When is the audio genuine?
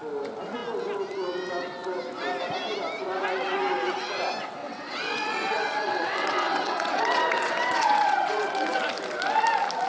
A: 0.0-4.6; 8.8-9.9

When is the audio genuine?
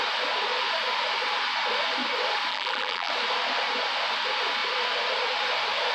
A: 0.0-2.5; 3.1-5.9